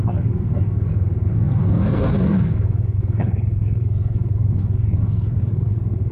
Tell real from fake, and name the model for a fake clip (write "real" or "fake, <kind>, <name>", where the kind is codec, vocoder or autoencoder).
fake, codec, SNAC